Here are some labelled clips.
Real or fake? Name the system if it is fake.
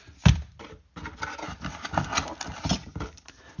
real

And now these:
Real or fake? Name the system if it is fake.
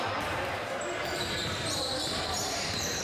fake, vocoder, BigVGAN v2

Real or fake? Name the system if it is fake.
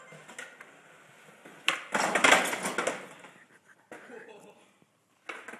real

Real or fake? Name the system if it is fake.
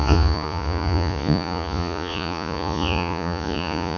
fake, vocoder, Vocos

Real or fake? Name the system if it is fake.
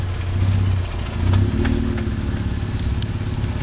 real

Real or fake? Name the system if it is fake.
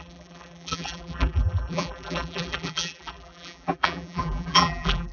fake, vocoder, BigVGAN v2